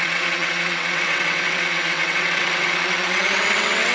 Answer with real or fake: fake